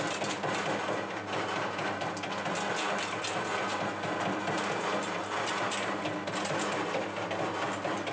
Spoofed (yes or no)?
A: no